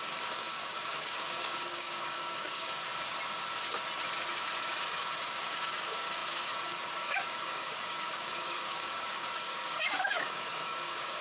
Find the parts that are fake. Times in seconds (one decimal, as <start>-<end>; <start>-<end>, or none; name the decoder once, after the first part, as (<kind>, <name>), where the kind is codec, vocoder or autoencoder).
0.0-2.9 (codec, DAC); 4.6-11.2